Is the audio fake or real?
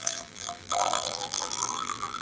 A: fake